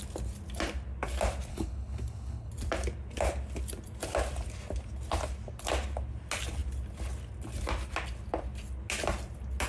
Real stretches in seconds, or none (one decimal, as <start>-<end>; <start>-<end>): 0.0-1.5; 2.5-9.7